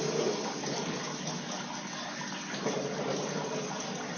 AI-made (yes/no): no